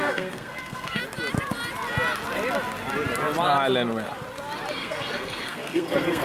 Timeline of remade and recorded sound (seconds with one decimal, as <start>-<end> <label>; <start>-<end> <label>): 0.0-1.0 remade; 1.0-4.7 recorded; 4.7-6.2 remade